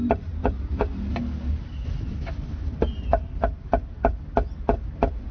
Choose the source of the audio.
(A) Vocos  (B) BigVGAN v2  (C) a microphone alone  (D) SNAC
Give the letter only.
C